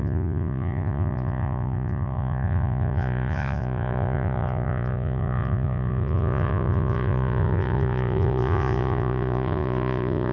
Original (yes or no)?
no